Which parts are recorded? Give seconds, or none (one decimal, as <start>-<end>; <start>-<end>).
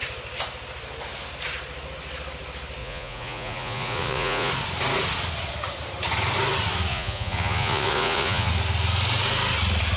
0.0-2.8; 4.5-6.9; 8.5-10.0